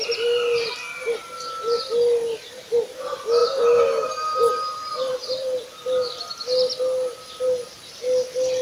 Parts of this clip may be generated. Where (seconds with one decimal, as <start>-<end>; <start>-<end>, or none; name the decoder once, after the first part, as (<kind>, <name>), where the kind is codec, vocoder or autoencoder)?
3.4-5.8 (vocoder, BigVGAN v2)